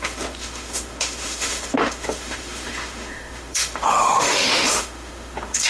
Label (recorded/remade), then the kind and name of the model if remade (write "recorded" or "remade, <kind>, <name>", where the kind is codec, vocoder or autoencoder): remade, autoencoder, DAC-VAE